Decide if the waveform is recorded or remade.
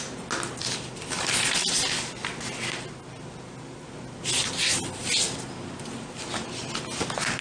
recorded